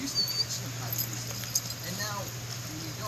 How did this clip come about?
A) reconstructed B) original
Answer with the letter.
B